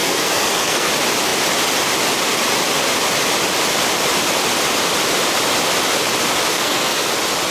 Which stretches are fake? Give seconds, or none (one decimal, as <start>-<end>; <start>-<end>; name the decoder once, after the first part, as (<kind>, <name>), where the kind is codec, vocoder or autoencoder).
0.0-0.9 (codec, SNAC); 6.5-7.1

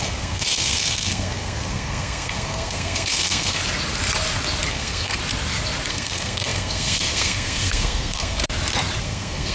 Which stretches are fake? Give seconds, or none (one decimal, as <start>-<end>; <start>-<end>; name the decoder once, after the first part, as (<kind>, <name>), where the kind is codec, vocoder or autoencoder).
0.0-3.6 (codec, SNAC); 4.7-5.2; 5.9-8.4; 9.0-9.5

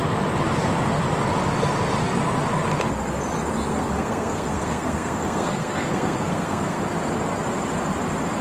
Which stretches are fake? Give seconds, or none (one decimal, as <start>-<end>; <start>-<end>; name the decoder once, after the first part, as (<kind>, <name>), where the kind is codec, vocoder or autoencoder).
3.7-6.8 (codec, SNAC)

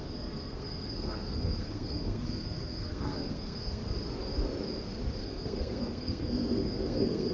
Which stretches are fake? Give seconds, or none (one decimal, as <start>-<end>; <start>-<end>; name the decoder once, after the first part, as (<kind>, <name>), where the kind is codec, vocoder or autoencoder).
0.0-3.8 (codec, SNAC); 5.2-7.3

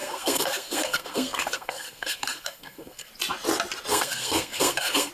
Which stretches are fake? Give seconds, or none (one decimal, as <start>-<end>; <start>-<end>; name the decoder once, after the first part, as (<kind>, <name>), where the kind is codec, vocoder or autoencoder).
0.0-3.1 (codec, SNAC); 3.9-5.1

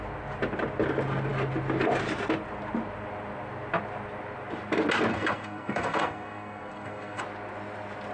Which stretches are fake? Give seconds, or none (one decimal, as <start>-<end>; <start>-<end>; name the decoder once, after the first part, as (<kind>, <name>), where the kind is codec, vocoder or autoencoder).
5.1-7.2 (codec, SNAC)

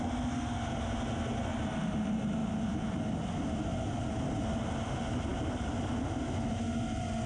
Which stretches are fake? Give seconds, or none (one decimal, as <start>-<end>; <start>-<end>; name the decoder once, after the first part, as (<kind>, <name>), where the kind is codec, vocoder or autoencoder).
none